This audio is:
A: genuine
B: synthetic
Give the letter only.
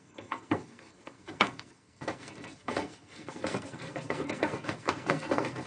B